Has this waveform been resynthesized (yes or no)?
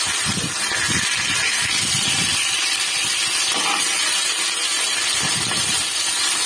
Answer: no